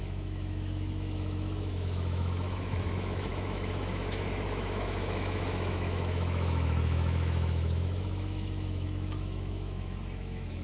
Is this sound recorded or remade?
remade